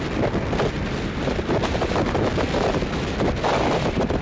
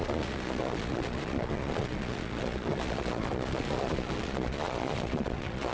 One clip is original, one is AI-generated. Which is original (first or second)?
first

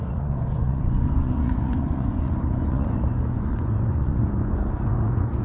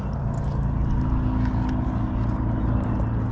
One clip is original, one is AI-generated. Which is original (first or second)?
second